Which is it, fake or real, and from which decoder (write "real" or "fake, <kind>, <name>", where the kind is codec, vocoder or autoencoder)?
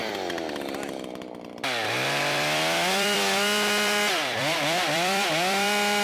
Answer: fake, vocoder, BigVGAN v2